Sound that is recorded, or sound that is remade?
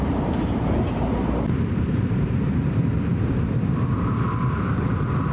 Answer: remade